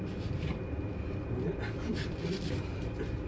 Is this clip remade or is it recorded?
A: recorded